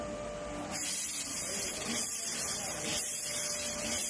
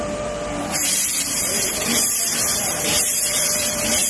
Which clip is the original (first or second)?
first